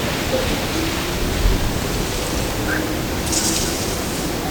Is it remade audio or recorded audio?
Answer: recorded